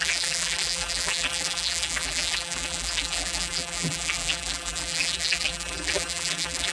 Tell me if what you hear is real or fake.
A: fake